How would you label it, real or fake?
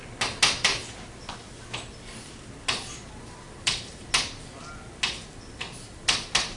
real